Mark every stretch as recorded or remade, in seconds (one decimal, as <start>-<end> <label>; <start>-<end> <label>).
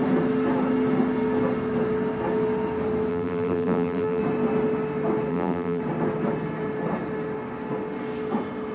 0.0-3.1 recorded; 3.1-4.2 remade; 4.2-5.3 recorded; 5.3-5.8 remade; 5.8-8.7 recorded